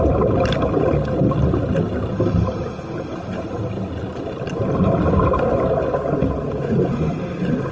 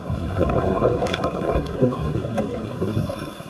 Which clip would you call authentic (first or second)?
first